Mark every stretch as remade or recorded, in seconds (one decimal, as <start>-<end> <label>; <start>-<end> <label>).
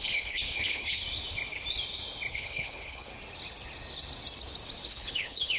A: 0.0-1.0 remade; 1.0-2.3 recorded; 2.3-3.1 remade; 3.1-4.9 recorded; 4.9-5.6 remade